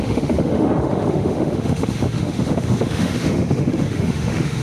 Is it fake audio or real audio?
fake